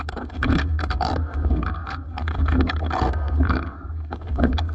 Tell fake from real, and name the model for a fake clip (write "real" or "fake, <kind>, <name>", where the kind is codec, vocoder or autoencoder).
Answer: fake, codec, SNAC